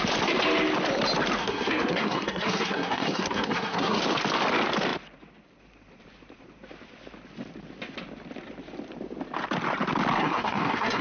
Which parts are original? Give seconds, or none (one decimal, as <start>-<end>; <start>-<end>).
0.0-1.4; 4.0-10.2